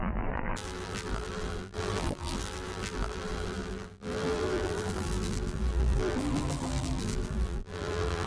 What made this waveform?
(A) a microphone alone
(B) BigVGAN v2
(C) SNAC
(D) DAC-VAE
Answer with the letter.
B